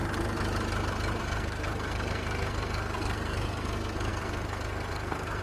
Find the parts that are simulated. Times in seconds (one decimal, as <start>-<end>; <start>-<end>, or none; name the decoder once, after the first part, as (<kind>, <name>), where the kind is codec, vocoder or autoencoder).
1.2-5.4 (codec, SNAC)